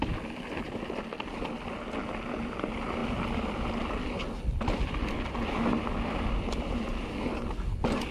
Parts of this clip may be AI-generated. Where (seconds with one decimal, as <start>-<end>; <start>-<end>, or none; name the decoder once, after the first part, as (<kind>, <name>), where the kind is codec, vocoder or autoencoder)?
none